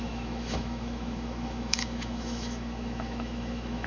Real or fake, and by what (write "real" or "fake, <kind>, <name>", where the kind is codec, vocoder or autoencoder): fake, autoencoder, DAC-VAE